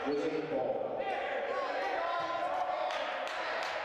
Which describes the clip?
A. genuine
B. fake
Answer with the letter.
A